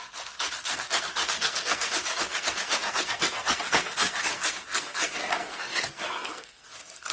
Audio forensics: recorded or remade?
remade